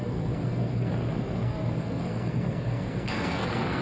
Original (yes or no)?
no